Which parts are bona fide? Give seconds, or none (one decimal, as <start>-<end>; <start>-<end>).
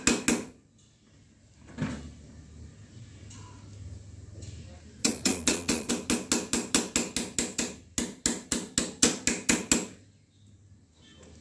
0.0-5.0; 5.9-11.4